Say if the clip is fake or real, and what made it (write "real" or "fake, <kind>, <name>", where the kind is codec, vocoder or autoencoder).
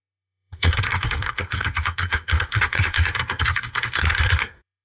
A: fake, codec, SNAC